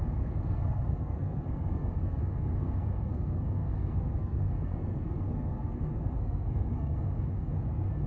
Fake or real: fake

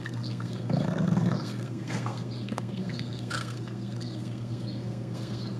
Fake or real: fake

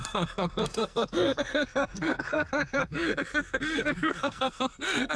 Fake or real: fake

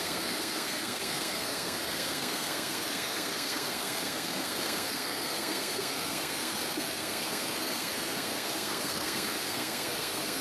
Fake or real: fake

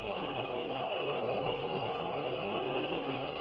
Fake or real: fake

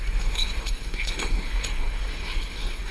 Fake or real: fake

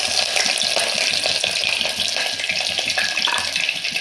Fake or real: real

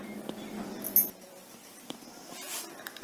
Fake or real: real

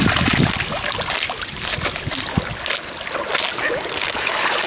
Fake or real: real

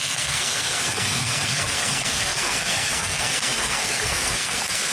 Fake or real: fake